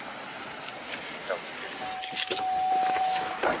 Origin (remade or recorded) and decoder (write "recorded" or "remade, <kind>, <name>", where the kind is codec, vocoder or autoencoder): recorded